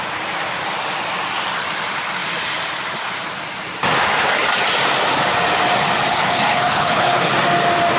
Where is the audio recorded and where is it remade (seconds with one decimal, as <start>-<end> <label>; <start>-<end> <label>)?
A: 0.0-6.1 recorded; 6.1-7.3 remade; 7.3-8.0 recorded